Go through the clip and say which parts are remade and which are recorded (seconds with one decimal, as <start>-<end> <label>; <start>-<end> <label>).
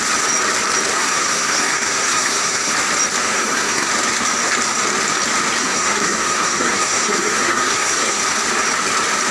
0.0-0.9 recorded; 0.9-2.7 remade; 2.7-3.2 recorded; 3.2-3.9 remade; 3.9-5.6 recorded; 5.6-8.2 remade; 8.2-9.3 recorded